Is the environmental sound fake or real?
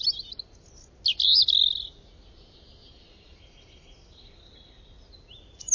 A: real